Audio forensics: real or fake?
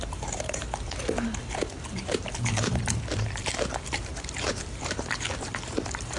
fake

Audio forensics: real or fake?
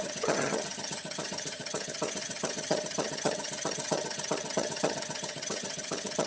fake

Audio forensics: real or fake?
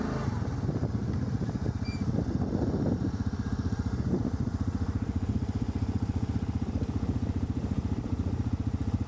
fake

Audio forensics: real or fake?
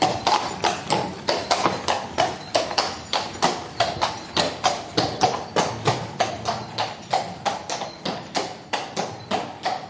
real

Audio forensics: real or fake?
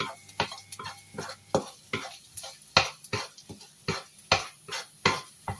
real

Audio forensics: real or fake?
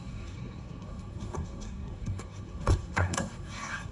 fake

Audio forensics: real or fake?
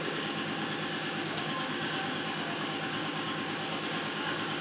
fake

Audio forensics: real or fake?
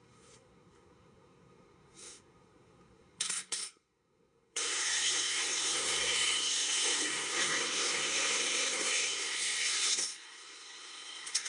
fake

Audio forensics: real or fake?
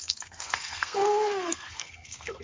fake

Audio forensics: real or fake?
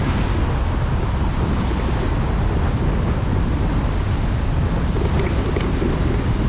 real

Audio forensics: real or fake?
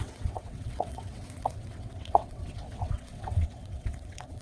fake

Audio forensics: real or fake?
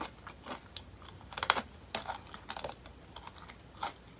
real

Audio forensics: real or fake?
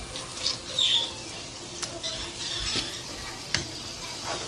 real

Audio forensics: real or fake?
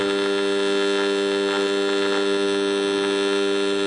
real